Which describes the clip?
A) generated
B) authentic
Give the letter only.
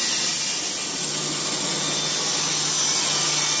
B